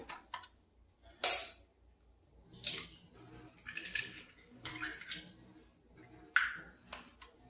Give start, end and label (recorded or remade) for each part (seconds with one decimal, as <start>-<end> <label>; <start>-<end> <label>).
0.0-3.8 recorded; 3.8-4.7 remade; 4.7-7.5 recorded